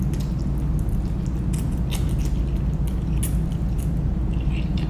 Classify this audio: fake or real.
real